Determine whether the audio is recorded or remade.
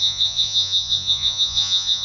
remade